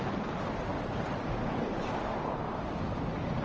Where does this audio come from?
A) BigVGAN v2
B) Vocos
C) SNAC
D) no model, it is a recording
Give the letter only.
D